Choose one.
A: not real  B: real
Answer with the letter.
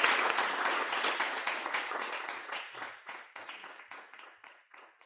A